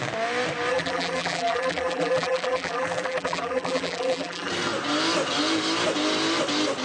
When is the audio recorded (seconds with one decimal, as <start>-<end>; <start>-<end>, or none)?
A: 0.0-0.7; 4.5-6.8